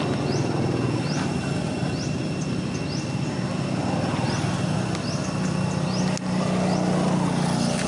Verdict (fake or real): real